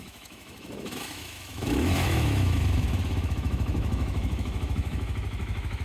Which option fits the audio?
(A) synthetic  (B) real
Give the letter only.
A